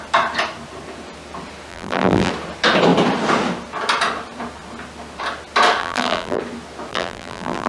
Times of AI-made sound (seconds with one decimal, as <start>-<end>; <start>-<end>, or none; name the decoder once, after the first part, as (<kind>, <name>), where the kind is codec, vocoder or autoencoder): 1.7-2.3 (vocoder, BigVGAN v2); 5.8-6.4; 6.9-7.7